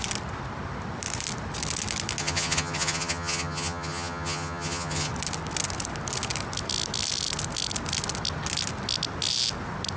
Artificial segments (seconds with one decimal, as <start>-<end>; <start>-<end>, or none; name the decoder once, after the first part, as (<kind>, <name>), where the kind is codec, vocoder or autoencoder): 2.2-5.1 (vocoder, HiFi-GAN)